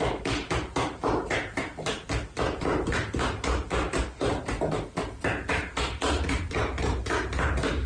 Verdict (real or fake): real